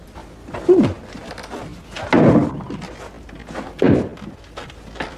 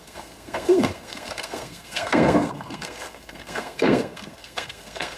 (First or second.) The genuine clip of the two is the first